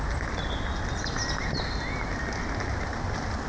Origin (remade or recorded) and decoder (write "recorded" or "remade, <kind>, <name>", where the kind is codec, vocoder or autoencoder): recorded